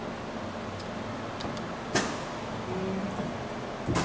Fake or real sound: real